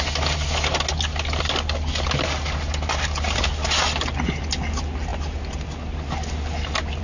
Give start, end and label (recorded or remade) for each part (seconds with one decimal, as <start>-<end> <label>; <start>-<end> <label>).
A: 0.0-7.0 recorded